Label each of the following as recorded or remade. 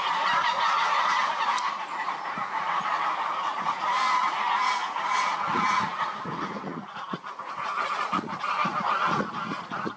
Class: remade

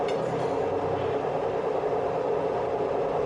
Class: recorded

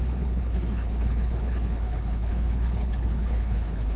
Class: remade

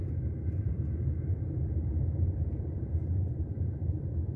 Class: remade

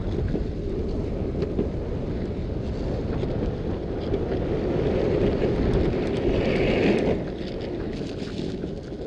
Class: recorded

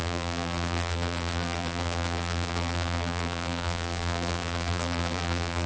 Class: remade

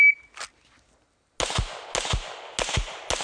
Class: recorded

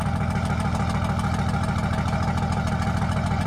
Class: recorded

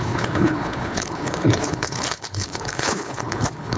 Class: remade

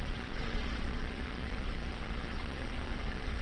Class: remade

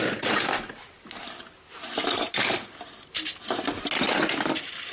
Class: recorded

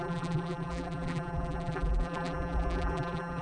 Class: remade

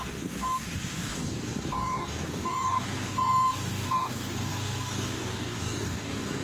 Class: remade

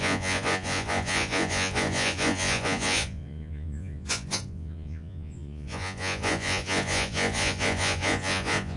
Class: remade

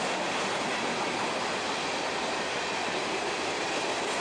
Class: recorded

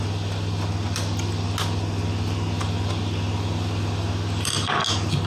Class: recorded